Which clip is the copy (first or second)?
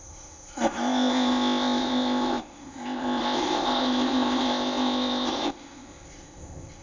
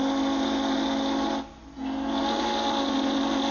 first